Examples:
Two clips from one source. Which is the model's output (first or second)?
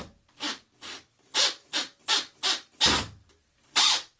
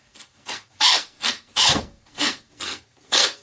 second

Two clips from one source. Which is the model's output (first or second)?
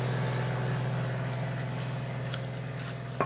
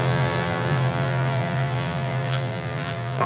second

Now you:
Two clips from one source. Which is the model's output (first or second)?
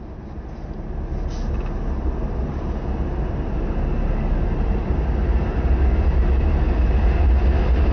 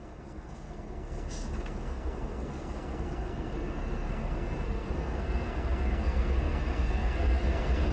second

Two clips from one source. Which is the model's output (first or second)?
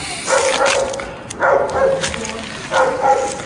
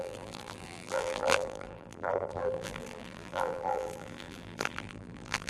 second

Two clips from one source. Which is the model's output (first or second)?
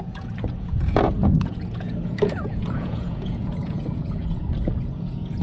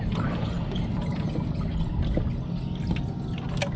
first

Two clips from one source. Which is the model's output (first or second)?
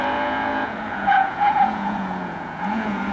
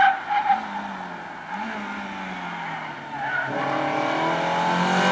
first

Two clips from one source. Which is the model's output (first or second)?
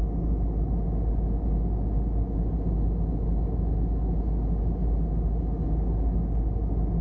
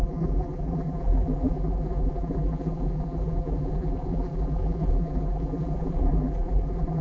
second